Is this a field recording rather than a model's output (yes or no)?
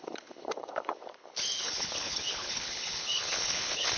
no